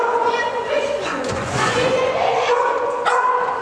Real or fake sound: fake